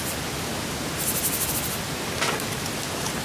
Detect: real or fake real